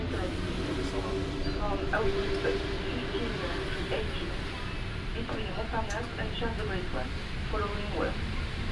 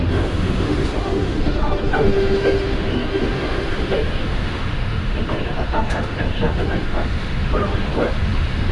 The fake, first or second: second